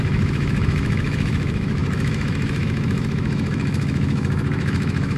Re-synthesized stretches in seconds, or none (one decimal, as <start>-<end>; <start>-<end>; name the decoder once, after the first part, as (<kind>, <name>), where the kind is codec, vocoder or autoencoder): 0.0-5.2 (autoencoder, DAC-VAE)